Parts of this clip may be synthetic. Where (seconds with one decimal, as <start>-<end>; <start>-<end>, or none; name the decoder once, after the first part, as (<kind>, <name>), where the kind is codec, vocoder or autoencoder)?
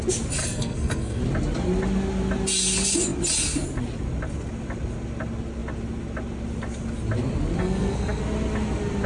0.4-1.2 (codec, SNAC); 7.6-8.2